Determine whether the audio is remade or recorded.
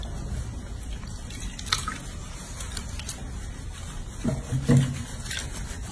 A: recorded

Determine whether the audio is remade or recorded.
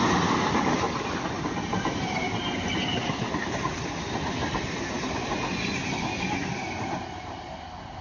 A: recorded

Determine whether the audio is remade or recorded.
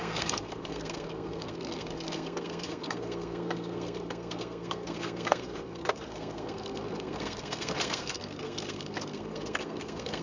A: remade